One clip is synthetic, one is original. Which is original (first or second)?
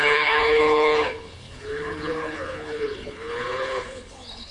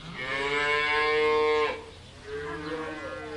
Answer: second